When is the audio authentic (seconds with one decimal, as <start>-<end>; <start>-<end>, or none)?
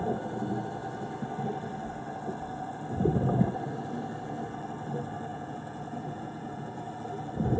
0.0-5.3; 6.9-7.6